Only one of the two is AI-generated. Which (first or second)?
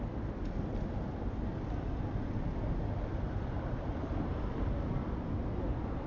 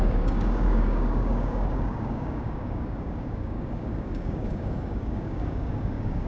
second